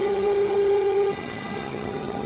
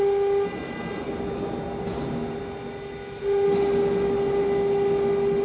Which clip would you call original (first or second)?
second